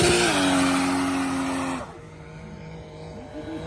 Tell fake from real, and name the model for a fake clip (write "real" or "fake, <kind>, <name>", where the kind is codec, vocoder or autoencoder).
real